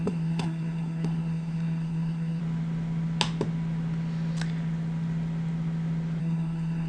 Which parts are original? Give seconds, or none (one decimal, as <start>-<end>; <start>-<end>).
2.4-6.2